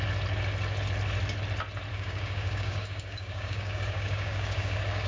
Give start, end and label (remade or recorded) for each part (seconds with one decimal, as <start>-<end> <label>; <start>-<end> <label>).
0.0-1.9 recorded; 1.9-5.1 remade